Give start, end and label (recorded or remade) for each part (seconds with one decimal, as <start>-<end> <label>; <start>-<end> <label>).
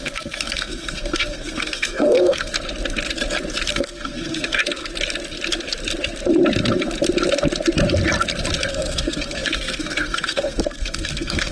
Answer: 0.0-2.5 remade; 2.5-3.7 recorded; 3.7-4.6 remade; 4.6-8.7 recorded; 8.7-11.5 remade